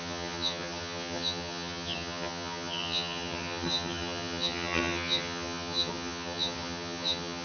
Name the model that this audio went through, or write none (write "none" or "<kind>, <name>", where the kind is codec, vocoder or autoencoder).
vocoder, HiFi-GAN